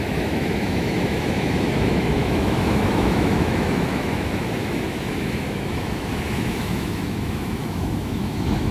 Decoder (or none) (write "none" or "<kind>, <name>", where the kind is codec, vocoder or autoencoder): autoencoder, DAC-VAE